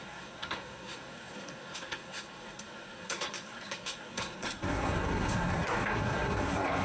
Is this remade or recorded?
remade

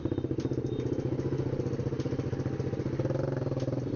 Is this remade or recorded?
recorded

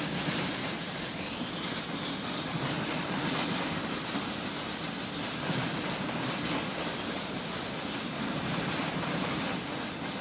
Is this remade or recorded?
recorded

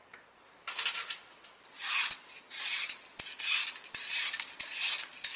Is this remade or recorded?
recorded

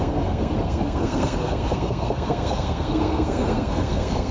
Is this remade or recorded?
remade